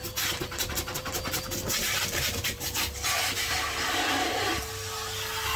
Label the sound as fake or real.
real